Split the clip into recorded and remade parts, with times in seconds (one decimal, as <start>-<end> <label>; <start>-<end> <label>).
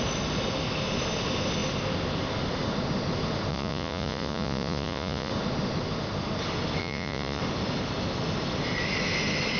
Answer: 0.0-3.5 recorded; 3.5-5.3 remade; 5.3-6.8 recorded; 6.8-7.4 remade; 7.4-9.6 recorded